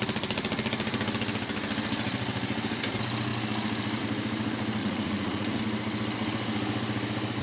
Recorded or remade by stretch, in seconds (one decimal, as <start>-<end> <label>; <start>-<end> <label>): 0.0-4.8 recorded; 4.8-5.6 remade; 5.6-7.4 recorded